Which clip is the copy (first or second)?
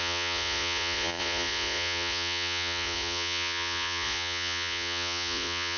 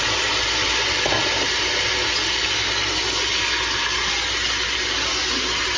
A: first